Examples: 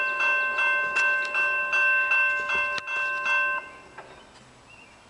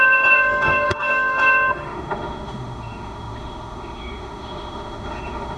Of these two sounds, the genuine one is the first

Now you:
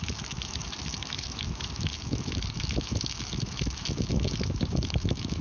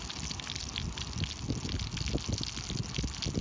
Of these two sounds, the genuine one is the second